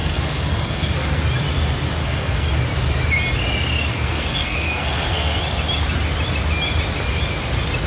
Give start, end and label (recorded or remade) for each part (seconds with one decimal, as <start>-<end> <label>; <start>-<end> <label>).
0.0-1.2 remade; 1.2-2.0 recorded; 2.0-2.5 remade; 2.5-3.9 recorded; 3.9-5.4 remade; 5.4-7.9 recorded